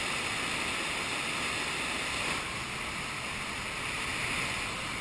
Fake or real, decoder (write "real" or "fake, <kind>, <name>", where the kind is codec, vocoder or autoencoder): real